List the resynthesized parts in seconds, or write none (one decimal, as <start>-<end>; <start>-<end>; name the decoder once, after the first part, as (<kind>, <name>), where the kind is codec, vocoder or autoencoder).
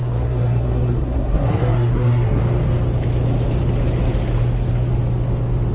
0.0-2.4 (codec, SNAC)